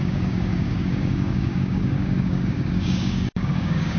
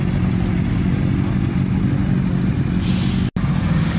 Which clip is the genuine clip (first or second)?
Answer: second